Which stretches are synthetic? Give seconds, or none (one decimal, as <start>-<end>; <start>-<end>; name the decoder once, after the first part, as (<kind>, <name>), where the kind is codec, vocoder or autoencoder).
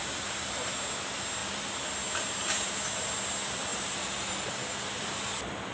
3.7-4.3 (vocoder, BigVGAN v2)